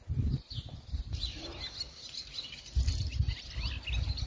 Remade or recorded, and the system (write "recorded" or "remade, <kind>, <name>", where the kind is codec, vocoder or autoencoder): recorded